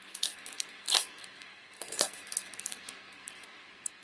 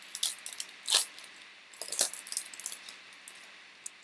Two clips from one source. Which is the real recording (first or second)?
second